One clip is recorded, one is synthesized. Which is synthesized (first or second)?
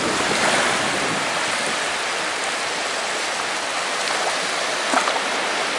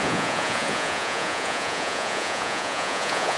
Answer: second